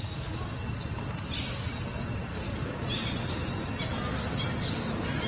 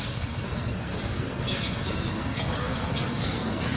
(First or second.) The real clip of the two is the first